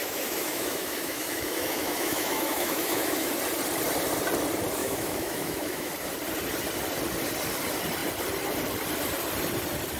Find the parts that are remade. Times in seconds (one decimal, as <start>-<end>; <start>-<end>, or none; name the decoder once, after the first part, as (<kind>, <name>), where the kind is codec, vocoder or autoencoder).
0.0-3.3 (autoencoder, DAC-VAE); 4.8-5.9